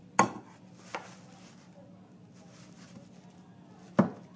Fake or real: real